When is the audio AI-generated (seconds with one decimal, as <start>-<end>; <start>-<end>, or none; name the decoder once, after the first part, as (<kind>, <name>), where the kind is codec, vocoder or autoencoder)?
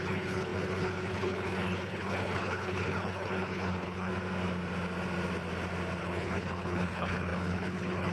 0.0-4.1 (codec, HILCodec); 6.0-8.1